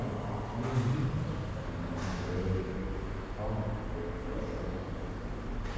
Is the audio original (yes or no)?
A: yes